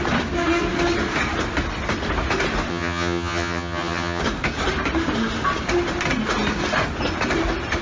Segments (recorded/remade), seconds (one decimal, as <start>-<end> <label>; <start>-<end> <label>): 0.0-2.7 recorded; 2.7-4.2 remade; 4.2-7.8 recorded